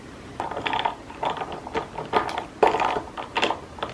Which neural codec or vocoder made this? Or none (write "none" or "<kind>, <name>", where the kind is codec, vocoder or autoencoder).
none